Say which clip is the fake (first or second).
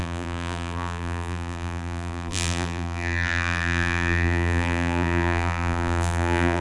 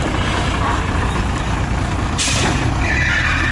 first